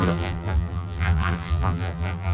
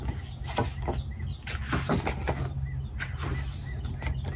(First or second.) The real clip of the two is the second